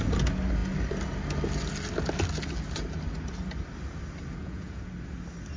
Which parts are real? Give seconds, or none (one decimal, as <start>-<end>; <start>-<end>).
0.0-4.4; 4.9-5.6